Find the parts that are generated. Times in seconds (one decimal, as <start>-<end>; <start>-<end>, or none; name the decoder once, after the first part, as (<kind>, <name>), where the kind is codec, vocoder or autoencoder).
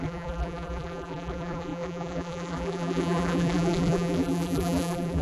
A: 0.0-5.2 (vocoder, BigVGAN v2)